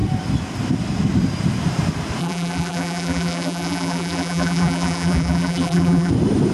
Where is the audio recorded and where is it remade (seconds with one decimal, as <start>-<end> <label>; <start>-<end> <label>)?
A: 0.0-2.2 recorded; 2.2-6.1 remade; 6.1-6.5 recorded